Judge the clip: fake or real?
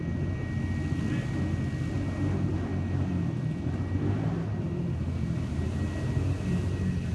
real